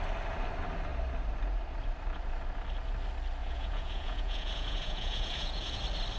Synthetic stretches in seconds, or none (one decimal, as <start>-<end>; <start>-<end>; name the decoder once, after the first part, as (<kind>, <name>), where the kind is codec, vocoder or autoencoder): 3.4-5.8 (vocoder, Vocos)